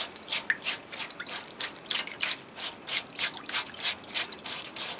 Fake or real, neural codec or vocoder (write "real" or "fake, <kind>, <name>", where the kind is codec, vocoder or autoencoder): real